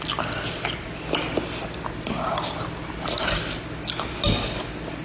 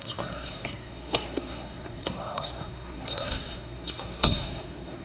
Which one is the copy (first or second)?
second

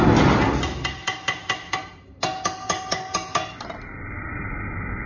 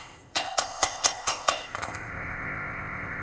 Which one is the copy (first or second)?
second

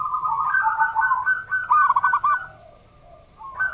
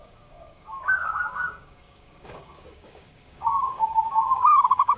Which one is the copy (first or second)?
second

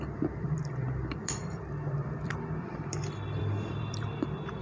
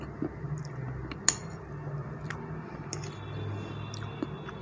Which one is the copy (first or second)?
first